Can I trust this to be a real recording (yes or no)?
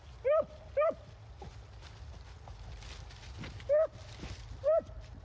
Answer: yes